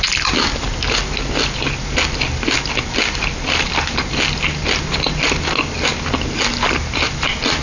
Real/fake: real